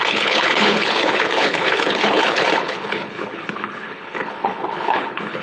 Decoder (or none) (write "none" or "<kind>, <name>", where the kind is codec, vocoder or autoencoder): codec, HILCodec